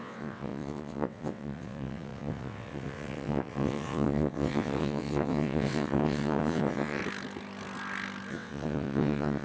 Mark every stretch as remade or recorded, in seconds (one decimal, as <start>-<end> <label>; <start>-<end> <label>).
0.0-7.0 remade; 7.0-8.3 recorded; 8.3-9.4 remade